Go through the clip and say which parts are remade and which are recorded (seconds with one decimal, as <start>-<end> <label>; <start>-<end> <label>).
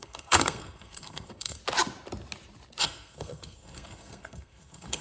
0.0-1.6 remade; 1.6-2.8 recorded; 2.8-5.0 remade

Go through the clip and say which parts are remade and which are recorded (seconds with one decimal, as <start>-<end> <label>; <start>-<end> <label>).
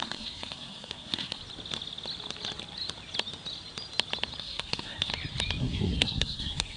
0.0-1.4 remade; 1.4-4.4 recorded; 4.4-5.1 remade; 5.1-5.6 recorded; 5.6-6.8 remade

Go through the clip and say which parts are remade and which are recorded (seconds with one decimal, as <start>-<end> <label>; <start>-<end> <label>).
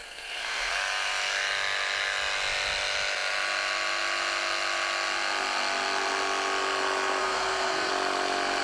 0.0-0.7 remade; 0.7-7.2 recorded; 7.2-7.9 remade; 7.9-8.6 recorded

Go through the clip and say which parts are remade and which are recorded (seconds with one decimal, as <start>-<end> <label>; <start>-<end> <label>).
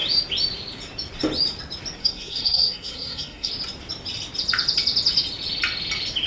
0.0-2.0 recorded; 2.0-3.5 remade; 3.5-6.3 recorded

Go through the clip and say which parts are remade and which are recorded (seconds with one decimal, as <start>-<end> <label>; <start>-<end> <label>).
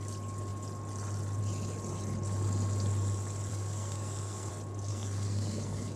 0.0-3.5 recorded; 3.5-4.5 remade; 4.5-4.9 recorded; 4.9-6.0 remade